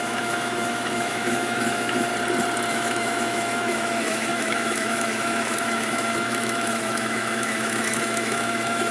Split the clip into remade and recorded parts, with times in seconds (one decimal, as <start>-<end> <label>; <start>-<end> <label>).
0.0-2.1 remade; 2.1-2.7 recorded; 2.7-8.9 remade